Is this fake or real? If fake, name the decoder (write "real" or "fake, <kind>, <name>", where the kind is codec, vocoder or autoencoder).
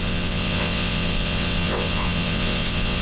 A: fake, vocoder, WaveNeXt